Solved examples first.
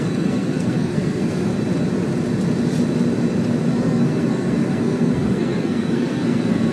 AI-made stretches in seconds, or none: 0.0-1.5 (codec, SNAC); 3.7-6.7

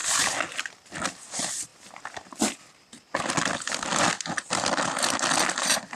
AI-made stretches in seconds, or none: none

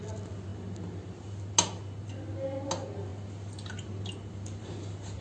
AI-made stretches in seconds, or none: none

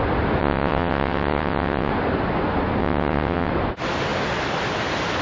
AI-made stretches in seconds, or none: 0.4-1.9 (vocoder, WaveNeXt); 2.8-3.5